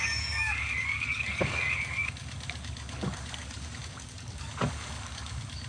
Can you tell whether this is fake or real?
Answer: fake